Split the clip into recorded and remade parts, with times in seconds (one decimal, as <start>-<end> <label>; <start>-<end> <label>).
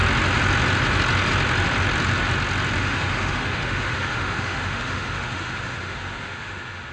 0.0-2.8 recorded; 2.8-6.9 remade